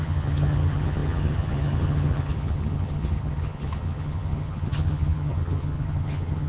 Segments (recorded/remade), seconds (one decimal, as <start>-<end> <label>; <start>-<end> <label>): 0.0-6.5 remade